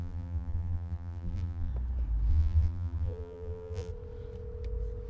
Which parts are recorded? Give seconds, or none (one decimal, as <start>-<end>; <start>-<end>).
1.7-2.3; 3.9-5.1